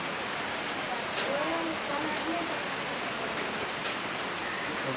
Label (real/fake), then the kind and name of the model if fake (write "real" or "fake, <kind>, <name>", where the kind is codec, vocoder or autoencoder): real